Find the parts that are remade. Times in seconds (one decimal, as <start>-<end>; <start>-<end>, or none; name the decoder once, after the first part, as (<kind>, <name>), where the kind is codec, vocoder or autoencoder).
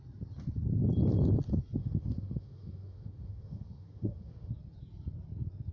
1.8-4.5 (autoencoder, DAC-VAE)